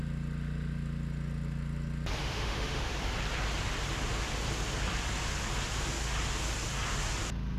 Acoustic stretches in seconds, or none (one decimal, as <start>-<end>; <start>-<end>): 0.0-2.2; 2.8-7.6